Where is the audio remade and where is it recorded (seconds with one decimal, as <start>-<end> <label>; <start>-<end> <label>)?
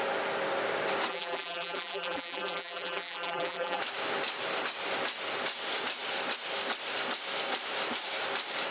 0.0-1.1 recorded; 1.1-3.8 remade; 3.8-8.7 recorded